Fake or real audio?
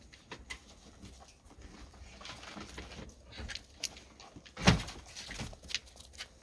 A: real